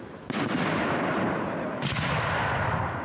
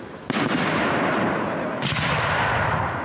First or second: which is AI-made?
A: first